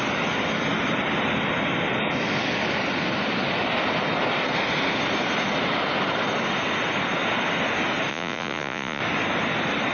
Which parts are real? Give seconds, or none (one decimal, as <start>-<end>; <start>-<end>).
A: 0.0-8.1; 9.0-9.9